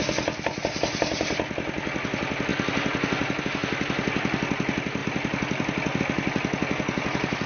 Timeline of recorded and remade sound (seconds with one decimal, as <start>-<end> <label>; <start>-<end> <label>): 0.0-5.0 recorded; 5.0-6.0 remade; 6.0-7.5 recorded